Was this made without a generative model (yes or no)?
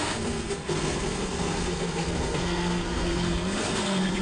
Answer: no